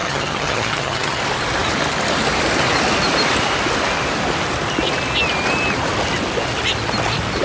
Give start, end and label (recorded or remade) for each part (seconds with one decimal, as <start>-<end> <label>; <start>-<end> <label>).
0.0-1.2 remade; 1.2-7.4 recorded